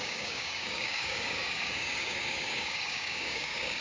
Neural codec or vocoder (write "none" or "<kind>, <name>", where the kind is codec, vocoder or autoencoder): codec, DAC